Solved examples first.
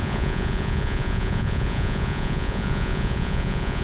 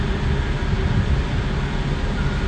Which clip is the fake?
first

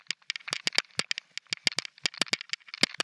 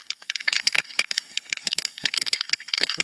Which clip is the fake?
second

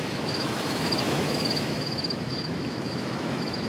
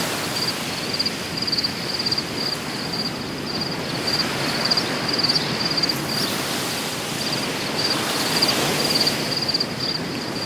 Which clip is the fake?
first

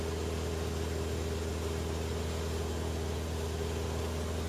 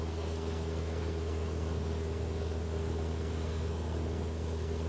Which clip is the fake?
second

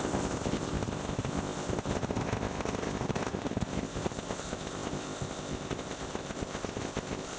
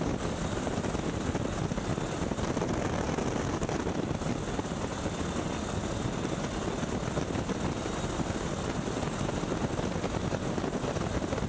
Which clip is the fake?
first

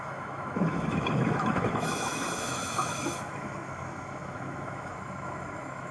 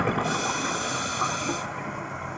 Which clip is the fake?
first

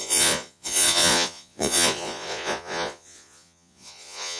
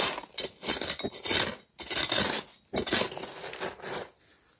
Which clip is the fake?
first